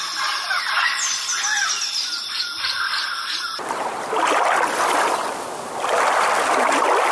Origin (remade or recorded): recorded